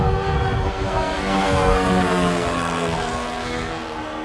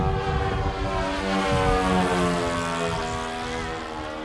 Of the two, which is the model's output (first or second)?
first